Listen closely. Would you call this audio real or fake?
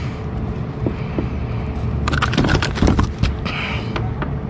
real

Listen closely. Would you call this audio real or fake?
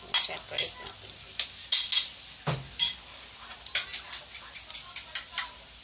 real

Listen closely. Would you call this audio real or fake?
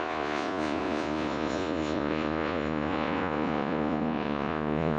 fake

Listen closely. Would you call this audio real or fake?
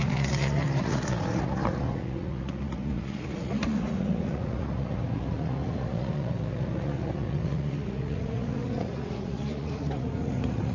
fake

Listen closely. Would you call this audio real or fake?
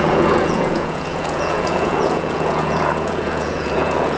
fake